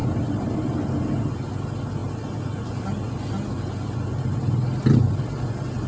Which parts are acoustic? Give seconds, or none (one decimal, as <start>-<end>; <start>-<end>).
0.0-5.9